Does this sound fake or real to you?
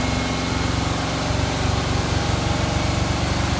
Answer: real